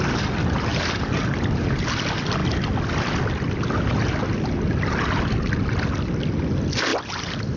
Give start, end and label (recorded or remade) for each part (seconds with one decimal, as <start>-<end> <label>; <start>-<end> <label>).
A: 0.0-7.6 recorded